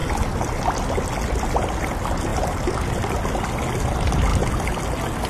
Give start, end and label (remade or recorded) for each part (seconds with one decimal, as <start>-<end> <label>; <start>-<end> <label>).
0.0-5.3 recorded